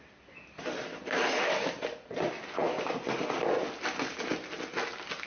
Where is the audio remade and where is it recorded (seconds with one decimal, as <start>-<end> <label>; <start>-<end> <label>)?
0.0-5.3 recorded